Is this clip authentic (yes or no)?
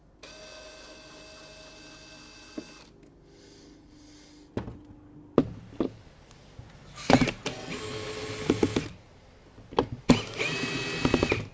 yes